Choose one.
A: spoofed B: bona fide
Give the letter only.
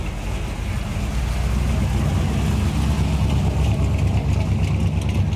B